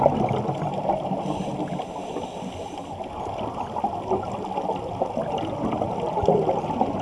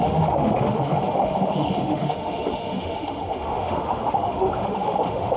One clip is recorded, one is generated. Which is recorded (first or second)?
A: first